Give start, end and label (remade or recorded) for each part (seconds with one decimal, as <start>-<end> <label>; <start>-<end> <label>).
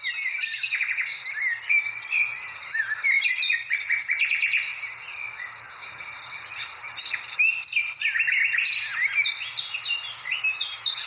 0.0-11.1 recorded